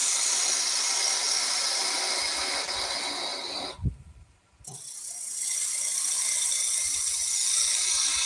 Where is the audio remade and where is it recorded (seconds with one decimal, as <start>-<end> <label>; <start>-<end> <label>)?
0.0-0.6 remade; 0.6-3.3 recorded; 3.3-6.6 remade; 6.6-8.3 recorded